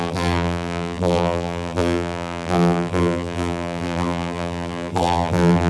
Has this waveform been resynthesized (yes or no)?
yes